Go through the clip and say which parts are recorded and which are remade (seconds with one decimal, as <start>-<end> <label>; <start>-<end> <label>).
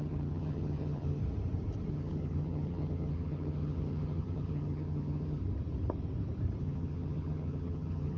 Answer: 0.0-1.2 remade; 1.2-1.9 recorded; 1.9-5.4 remade; 5.4-6.6 recorded; 6.6-8.2 remade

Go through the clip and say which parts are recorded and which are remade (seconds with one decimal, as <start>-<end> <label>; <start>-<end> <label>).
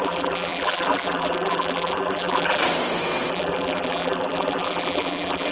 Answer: 0.0-2.6 remade; 2.6-3.3 recorded; 3.3-5.5 remade